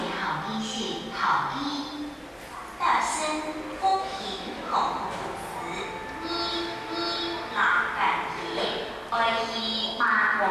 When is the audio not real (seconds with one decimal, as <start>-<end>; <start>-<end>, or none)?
3.9-4.7